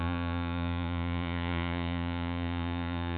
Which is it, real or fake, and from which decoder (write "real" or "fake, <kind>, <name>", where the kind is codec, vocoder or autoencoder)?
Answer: fake, vocoder, Vocos